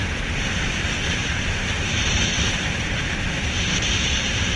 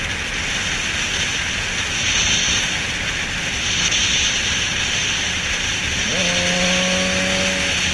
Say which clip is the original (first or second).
second